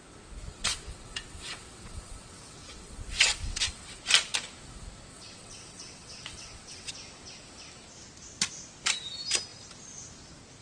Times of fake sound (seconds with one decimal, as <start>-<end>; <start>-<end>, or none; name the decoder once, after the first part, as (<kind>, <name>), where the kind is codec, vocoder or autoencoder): 0.6-4.0 (vocoder, WaveNeXt); 5.1-6.9